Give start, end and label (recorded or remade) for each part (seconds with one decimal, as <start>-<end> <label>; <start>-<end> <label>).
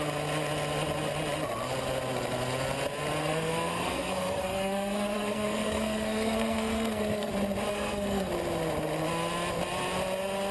0.0-3.2 recorded; 3.2-7.3 remade; 7.3-7.7 recorded; 7.7-8.3 remade; 8.3-10.5 recorded